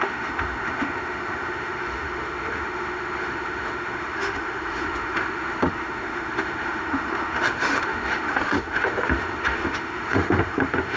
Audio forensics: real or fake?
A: fake